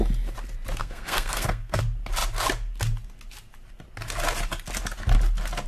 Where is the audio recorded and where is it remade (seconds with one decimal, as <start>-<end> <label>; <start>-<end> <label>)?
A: 0.0-0.8 recorded; 0.8-1.8 remade; 1.8-5.7 recorded